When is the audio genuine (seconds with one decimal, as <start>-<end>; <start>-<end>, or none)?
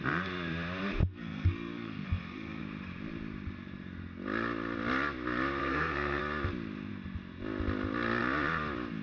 0.0-1.0; 2.6-5.6; 6.2-9.0